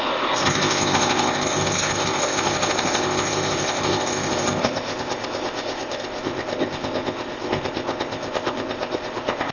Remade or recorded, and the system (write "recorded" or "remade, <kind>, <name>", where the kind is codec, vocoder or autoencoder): remade, codec, ZipCodec